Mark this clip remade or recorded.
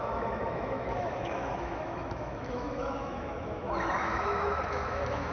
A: remade